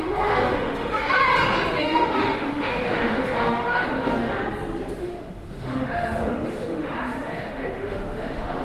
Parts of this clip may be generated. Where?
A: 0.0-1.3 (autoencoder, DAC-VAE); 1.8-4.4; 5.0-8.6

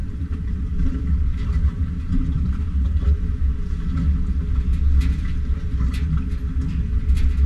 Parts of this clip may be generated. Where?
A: 0.0-3.4 (vocoder, BigVGAN v2)

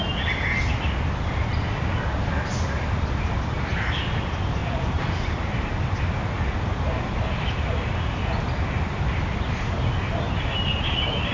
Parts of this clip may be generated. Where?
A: 4.6-5.6 (vocoder, BigVGAN v2)

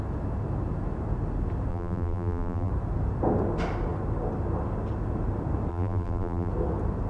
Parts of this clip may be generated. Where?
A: 1.7-2.7 (vocoder, BigVGAN v2); 5.7-6.5

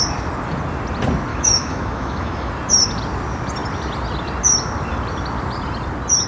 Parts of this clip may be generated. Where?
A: 1.3-2.5 (autoencoder, DAC-VAE)

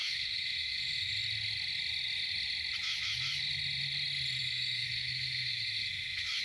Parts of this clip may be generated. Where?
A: 0.0-1.1 (autoencoder, DAC-VAE); 4.4-6.4

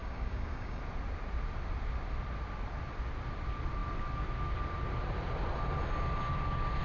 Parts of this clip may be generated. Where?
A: 0.0-0.8 (codec, DAC)

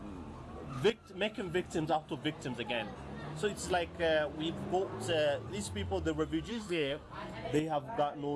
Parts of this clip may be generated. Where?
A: 6.5-7.1 (codec, SNAC)